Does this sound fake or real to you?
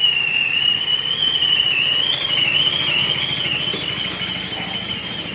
real